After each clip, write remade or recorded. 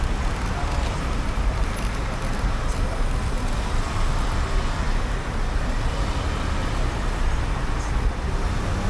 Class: recorded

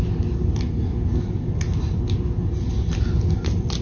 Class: recorded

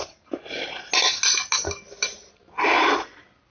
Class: recorded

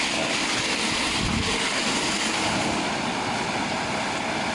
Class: recorded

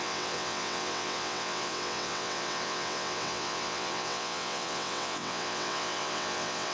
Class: remade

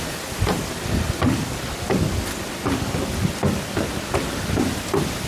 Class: recorded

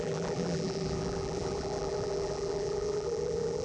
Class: remade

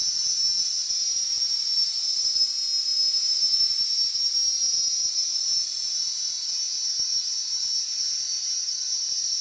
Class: recorded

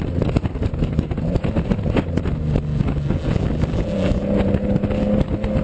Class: recorded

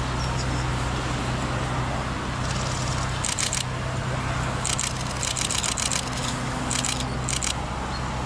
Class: recorded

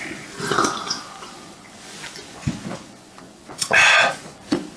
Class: remade